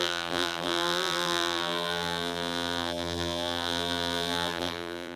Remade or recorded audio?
remade